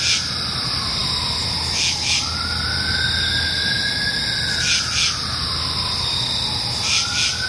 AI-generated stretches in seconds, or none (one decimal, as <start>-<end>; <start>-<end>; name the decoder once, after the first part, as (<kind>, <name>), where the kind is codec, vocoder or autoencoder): none